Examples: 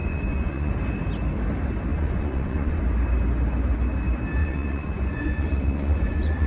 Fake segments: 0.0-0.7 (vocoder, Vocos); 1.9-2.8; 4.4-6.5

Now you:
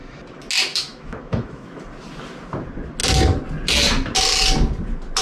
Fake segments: 0.7-1.8 (autoencoder, DAC-VAE)

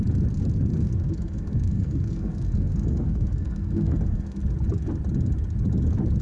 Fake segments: 0.7-4.4 (codec, SNAC)